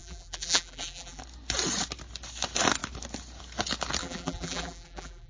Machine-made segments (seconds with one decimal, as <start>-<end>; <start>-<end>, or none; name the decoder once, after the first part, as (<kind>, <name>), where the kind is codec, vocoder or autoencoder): 0.0-1.2 (vocoder, BigVGAN v2); 4.0-5.3